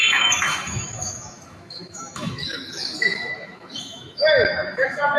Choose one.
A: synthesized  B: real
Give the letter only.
A